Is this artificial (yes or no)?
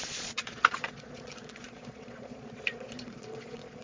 yes